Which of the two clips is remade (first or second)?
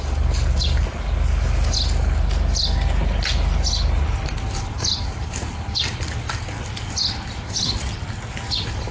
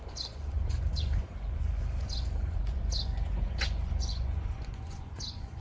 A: second